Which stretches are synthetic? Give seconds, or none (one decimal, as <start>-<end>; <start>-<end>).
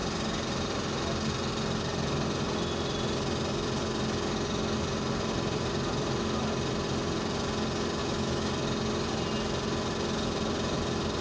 8.0-8.5